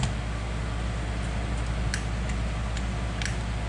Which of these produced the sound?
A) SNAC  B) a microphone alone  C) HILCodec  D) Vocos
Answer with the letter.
B